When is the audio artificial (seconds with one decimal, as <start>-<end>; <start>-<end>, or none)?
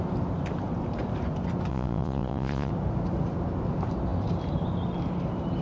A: 1.7-2.7